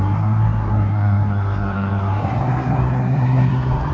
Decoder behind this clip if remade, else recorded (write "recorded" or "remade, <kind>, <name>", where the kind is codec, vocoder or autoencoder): remade, codec, SNAC